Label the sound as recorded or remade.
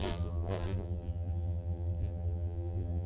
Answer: remade